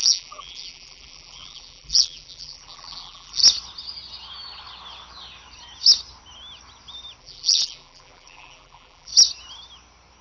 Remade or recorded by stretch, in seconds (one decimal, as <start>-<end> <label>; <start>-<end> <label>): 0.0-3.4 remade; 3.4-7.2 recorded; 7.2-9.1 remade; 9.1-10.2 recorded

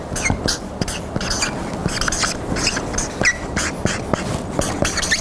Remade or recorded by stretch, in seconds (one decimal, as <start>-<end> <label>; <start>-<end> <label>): 0.0-5.2 recorded

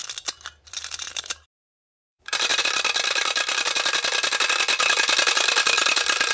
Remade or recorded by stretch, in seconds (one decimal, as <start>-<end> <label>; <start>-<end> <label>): 0.0-0.6 recorded; 0.6-2.5 remade; 2.5-6.3 recorded

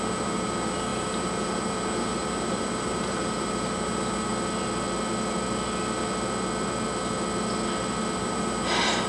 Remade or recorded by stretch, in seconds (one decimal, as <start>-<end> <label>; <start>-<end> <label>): 0.0-4.3 remade; 4.3-8.2 recorded; 8.2-9.1 remade